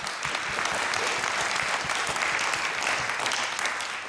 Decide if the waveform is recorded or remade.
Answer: recorded